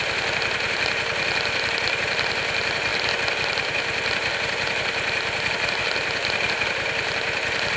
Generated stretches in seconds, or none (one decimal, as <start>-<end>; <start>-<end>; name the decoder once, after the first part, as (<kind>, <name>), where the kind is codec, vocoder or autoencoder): none